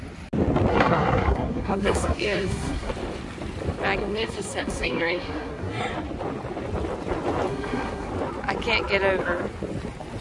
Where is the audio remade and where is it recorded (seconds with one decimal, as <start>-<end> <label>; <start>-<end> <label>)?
0.0-0.7 recorded; 0.7-2.9 remade; 2.9-4.0 recorded; 4.0-5.9 remade; 5.9-7.5 recorded; 7.5-8.1 remade; 8.1-10.2 recorded